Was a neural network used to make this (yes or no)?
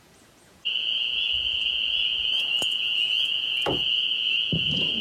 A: yes